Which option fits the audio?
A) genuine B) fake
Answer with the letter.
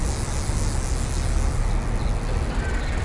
A